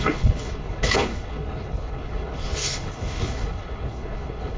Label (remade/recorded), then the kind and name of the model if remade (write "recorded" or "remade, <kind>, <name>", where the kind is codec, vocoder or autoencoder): remade, codec, HILCodec